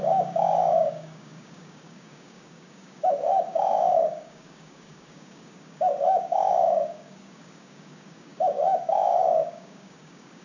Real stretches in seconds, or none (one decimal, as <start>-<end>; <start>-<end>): none